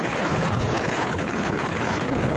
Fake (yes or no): yes